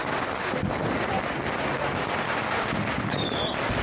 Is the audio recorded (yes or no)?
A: yes